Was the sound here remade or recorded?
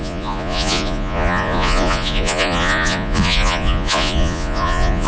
remade